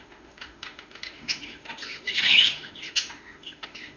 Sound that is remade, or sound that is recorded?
remade